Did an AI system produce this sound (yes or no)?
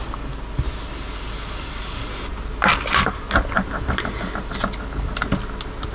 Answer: no